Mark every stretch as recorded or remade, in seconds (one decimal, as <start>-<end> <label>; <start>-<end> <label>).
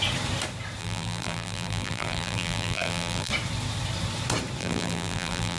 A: 0.0-0.8 recorded; 0.8-3.3 remade; 3.3-4.6 recorded; 4.6-5.6 remade